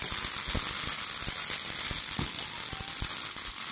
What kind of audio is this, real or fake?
real